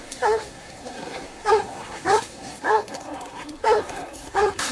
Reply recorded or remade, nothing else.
remade